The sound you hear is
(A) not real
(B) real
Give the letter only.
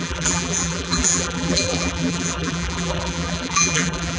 A